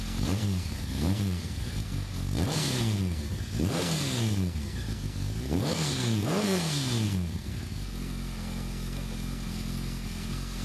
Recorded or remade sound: remade